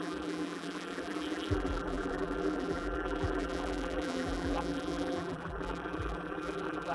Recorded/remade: remade